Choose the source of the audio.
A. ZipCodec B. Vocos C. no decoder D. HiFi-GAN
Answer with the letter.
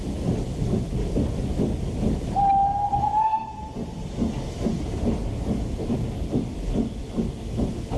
C